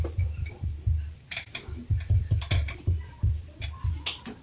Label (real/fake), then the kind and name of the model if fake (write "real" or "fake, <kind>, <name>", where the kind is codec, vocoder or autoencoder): real